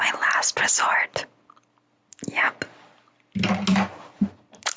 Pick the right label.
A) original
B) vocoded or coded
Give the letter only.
A